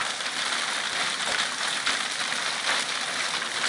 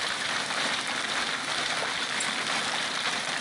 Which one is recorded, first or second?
first